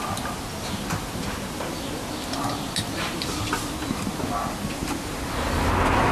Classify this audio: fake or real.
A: real